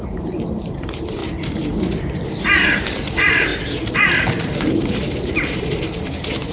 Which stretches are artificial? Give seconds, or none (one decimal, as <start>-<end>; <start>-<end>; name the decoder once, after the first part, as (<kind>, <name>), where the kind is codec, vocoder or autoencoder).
0.0-1.2 (vocoder, BigVGAN v2); 3.0-3.5; 4.1-6.5

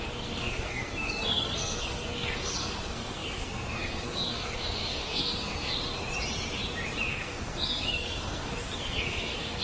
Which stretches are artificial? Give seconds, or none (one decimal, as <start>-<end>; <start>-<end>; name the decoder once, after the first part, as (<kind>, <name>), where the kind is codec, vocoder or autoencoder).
0.0-5.7 (codec, SNAC); 7.1-9.6

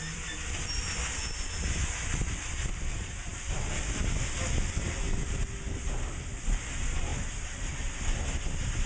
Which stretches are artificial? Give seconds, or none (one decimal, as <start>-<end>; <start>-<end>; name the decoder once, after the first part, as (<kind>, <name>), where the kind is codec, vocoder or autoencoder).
none

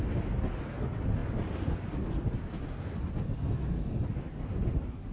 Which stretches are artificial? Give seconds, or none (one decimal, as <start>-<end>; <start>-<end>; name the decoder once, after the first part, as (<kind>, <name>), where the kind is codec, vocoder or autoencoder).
none